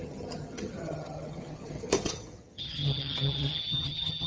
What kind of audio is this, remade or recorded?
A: remade